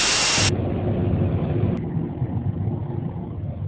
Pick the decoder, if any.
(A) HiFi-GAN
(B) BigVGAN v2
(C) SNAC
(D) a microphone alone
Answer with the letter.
D